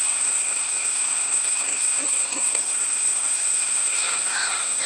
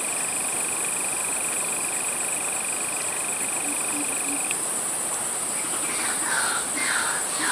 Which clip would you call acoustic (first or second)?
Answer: second